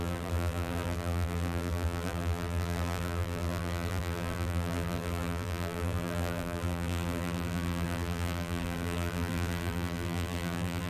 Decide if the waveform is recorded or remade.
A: remade